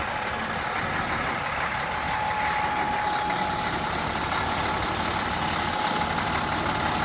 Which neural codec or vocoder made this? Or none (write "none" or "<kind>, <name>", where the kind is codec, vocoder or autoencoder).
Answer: none